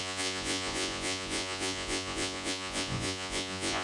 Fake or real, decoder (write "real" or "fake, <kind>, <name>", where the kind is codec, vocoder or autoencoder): fake, vocoder, Vocos